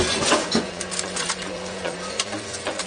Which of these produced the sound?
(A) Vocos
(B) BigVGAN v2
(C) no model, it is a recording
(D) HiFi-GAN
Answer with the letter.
A